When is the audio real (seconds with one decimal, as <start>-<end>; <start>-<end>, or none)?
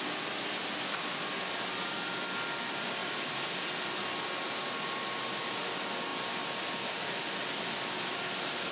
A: 0.0-8.7